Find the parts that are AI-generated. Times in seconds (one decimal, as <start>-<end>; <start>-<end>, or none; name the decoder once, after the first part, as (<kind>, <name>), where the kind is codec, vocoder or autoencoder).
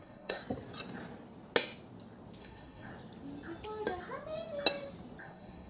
0.0-0.4 (codec, SNAC); 2.4-2.9; 5.2-5.7